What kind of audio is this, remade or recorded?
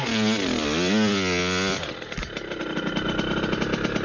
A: recorded